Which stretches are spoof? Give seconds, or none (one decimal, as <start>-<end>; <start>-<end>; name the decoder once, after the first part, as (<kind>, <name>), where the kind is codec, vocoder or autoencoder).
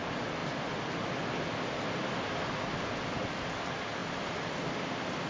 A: none